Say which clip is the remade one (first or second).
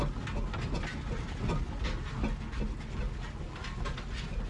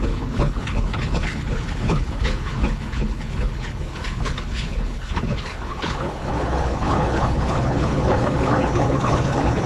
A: second